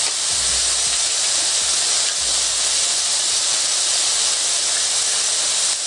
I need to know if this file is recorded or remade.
recorded